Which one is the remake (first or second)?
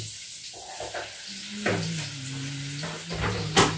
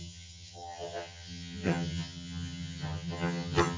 second